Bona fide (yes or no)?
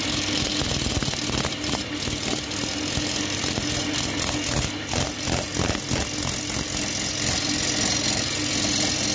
yes